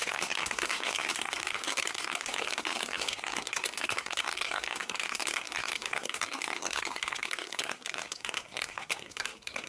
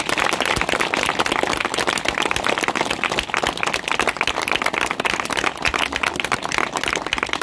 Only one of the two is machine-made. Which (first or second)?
first